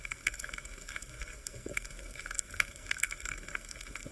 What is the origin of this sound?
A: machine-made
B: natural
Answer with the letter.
A